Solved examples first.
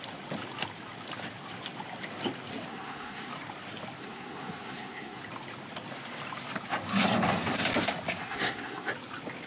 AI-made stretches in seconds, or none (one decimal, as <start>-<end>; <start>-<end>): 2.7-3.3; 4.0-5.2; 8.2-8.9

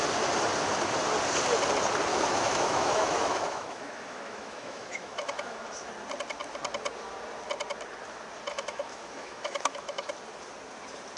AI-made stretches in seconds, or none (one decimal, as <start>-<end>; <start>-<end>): 2.1-5.9; 8.5-10.1

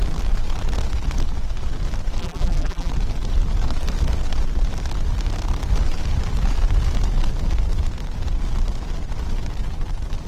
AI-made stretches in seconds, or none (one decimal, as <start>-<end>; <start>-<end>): 2.2-2.9

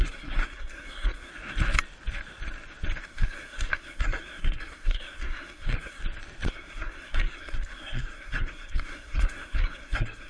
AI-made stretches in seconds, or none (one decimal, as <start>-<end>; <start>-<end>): 0.0-1.3; 3.0-6.0; 6.5-10.3

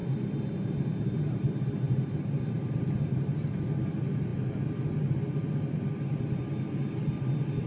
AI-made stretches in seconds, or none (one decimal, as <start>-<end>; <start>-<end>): 0.0-3.3

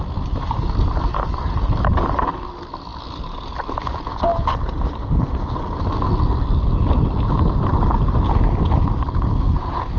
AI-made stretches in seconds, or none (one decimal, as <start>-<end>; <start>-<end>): none

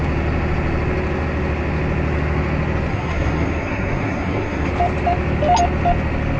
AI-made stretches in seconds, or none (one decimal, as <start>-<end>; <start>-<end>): 2.9-4.7

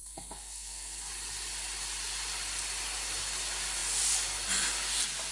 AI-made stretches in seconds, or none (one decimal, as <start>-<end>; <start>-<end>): 0.0-1.1